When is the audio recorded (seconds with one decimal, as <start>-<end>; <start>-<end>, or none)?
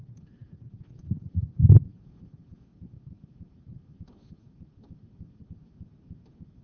0.0-6.6